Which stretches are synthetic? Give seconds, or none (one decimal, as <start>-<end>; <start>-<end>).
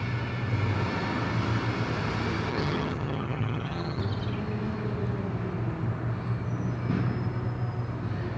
2.5-4.0